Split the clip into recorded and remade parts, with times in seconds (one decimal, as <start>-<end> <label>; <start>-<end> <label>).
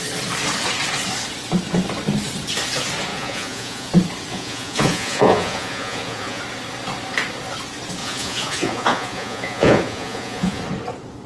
0.0-3.1 recorded; 3.1-3.9 remade; 3.9-4.3 recorded; 4.3-6.4 remade; 6.4-8.0 recorded; 8.0-10.6 remade; 10.6-11.3 recorded